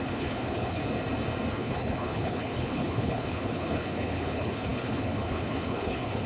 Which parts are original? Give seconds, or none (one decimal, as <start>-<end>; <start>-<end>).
0.8-1.5